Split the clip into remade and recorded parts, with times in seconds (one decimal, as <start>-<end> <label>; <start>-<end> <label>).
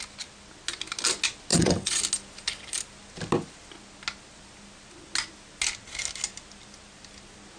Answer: 0.0-1.5 recorded; 1.5-2.0 remade; 2.0-7.6 recorded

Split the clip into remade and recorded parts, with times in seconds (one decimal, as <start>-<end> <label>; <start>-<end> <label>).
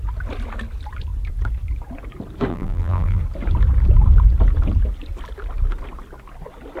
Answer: 0.0-2.5 recorded; 2.5-3.2 remade; 3.2-6.8 recorded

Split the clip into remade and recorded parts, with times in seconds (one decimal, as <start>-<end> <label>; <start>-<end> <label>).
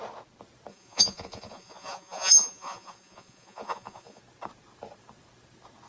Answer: 0.0-0.7 recorded; 0.7-4.2 remade; 4.2-5.9 recorded